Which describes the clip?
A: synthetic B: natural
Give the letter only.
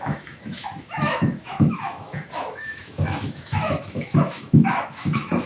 A